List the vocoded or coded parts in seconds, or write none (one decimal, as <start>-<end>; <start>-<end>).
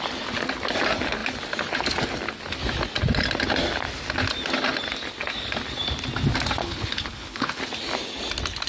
6.6-7.6